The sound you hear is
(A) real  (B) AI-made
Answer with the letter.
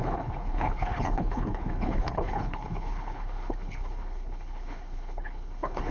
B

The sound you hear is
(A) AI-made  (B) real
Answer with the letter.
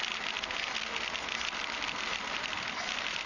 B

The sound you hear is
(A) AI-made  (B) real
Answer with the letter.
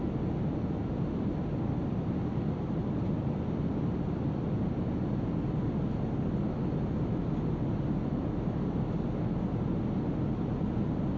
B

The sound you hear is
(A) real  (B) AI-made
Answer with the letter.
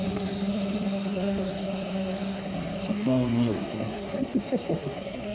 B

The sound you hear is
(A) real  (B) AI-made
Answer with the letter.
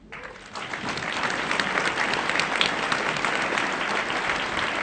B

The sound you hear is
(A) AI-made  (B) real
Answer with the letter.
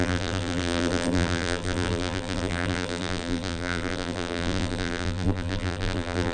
A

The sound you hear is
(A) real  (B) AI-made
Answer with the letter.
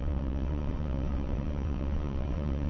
B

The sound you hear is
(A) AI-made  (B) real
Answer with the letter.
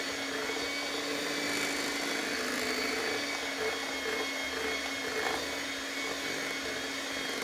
B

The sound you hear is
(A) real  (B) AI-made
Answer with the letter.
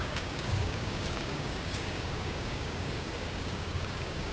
B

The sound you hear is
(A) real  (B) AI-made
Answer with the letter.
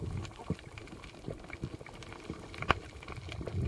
A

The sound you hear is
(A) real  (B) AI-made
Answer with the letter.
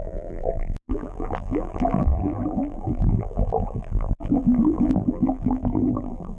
B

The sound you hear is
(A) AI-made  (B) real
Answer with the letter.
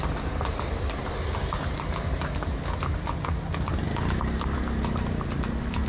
B